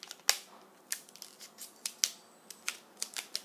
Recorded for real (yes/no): yes